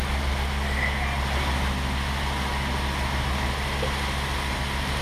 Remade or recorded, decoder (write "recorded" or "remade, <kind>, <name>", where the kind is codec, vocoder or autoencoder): recorded